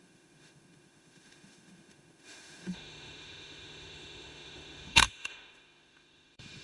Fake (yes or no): yes